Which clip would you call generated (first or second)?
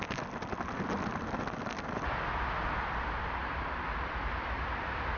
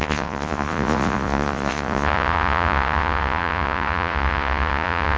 second